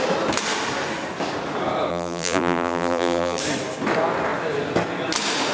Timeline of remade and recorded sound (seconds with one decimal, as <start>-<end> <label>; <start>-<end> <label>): 0.0-1.9 recorded; 1.9-3.4 remade; 3.4-5.5 recorded